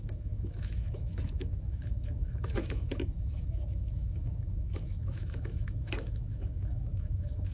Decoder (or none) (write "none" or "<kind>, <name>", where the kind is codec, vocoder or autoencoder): autoencoder, DAC-VAE